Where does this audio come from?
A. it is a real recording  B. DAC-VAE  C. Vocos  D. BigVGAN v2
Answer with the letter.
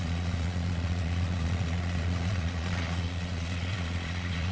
C